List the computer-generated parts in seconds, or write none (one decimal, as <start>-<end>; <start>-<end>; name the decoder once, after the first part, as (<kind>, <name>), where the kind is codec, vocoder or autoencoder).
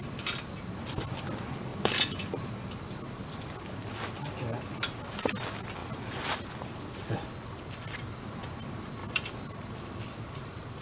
1.7-3.2 (vocoder, BigVGAN v2); 9.0-9.5